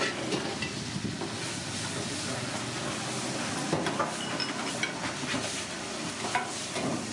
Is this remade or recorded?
recorded